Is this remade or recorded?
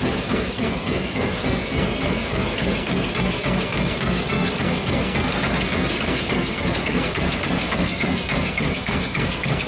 remade